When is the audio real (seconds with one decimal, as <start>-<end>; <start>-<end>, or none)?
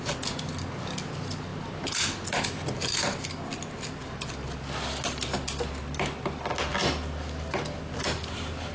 0.0-8.7